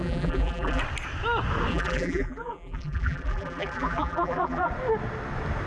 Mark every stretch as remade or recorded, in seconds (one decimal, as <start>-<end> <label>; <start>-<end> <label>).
0.0-0.8 remade; 0.8-1.7 recorded; 1.7-4.7 remade; 4.7-5.7 recorded